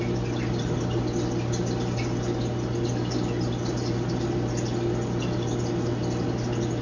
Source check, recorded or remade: recorded